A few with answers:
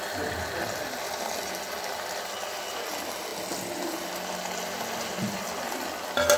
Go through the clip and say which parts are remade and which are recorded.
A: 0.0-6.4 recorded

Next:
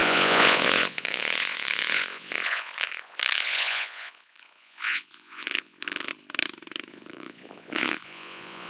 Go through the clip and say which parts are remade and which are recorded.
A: 0.0-6.1 remade; 6.1-6.9 recorded; 6.9-8.7 remade

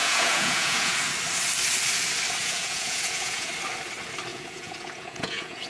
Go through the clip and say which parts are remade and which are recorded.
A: 0.0-0.9 remade; 0.9-2.4 recorded; 2.4-3.5 remade; 3.5-4.3 recorded; 4.3-5.7 remade

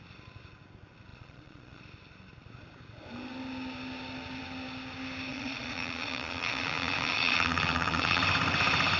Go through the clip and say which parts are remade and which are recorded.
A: 0.0-1.1 recorded; 1.1-1.8 remade; 1.8-5.3 recorded; 5.3-8.2 remade; 8.2-9.0 recorded

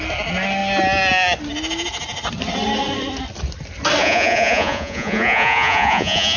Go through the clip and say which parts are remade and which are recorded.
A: 0.0-4.0 recorded; 4.0-6.4 remade

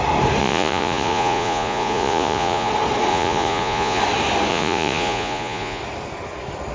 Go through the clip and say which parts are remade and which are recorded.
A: 0.0-0.4 recorded; 0.4-2.7 remade; 2.7-3.1 recorded; 3.1-4.0 remade; 4.0-4.5 recorded; 4.5-5.8 remade; 5.8-6.7 recorded